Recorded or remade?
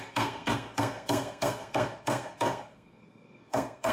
remade